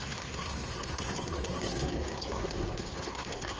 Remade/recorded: remade